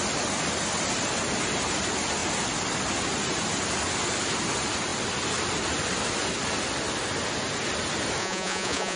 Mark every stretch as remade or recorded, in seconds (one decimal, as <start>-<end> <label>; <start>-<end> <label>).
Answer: 0.0-8.2 recorded; 8.2-9.0 remade